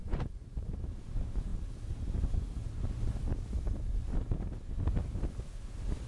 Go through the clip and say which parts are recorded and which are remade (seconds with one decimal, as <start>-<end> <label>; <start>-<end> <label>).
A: 0.0-0.7 remade; 0.7-6.1 recorded